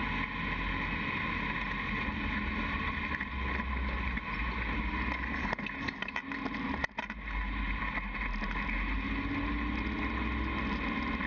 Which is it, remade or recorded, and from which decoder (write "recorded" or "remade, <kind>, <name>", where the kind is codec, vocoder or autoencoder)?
recorded